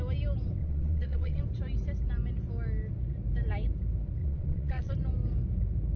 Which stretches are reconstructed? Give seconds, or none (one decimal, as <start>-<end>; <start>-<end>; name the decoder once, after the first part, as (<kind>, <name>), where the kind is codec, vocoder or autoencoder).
0.6-1.4 (vocoder, WaveNeXt); 4.2-4.9